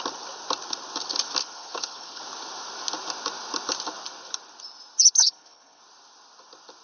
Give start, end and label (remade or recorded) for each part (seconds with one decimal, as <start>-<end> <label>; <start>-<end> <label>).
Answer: 0.0-1.4 recorded; 1.4-2.2 remade; 2.2-5.2 recorded; 5.2-5.8 remade; 5.8-6.8 recorded